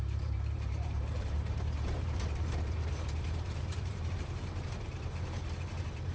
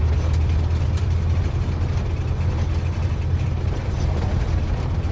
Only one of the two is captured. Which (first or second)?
second